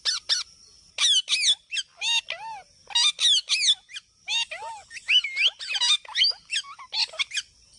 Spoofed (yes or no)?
no